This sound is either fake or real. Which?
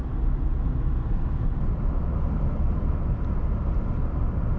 real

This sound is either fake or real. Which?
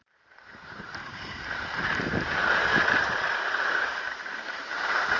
fake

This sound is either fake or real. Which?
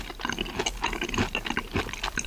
real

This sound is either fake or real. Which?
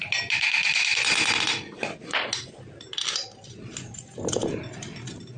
real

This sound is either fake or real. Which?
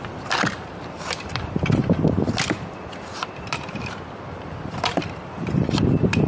fake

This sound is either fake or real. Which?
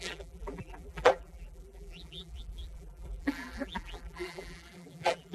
fake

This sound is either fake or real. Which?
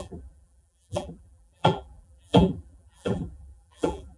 fake